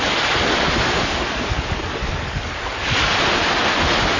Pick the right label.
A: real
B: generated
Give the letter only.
A